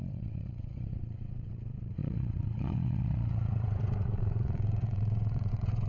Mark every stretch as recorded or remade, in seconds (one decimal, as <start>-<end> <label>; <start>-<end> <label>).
0.0-5.9 remade